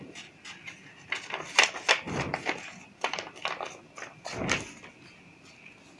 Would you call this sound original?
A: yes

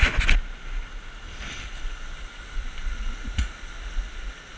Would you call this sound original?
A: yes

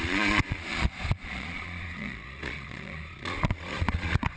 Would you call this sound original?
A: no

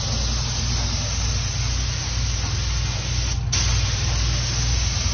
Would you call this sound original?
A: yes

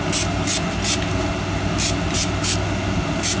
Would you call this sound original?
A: yes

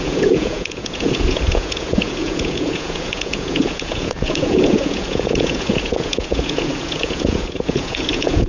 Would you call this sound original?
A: no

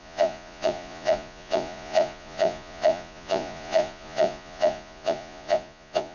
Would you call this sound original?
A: no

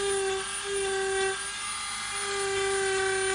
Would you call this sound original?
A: yes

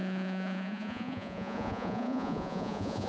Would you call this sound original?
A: no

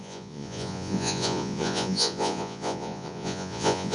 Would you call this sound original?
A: no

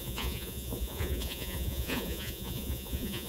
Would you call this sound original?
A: no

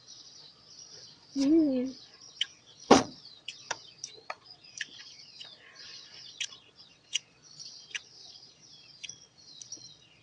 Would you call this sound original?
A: no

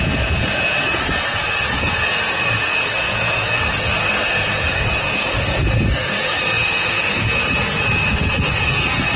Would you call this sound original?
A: no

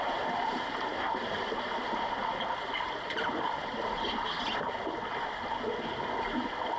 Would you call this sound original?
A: yes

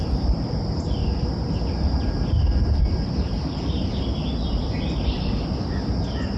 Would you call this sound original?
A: yes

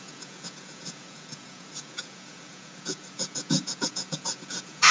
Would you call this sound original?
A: no